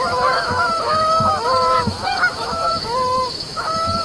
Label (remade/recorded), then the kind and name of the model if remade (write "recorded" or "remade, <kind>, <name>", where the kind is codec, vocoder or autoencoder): remade, autoencoder, DAC-VAE